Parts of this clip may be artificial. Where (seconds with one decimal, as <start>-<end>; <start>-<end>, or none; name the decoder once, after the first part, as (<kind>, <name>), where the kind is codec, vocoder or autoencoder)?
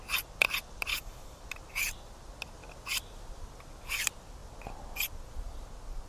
0.9-1.4 (codec, DAC)